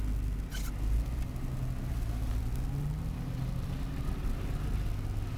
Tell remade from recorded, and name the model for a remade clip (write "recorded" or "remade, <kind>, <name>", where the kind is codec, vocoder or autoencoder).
recorded